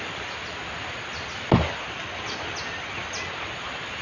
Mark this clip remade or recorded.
recorded